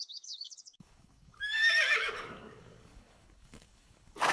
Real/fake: fake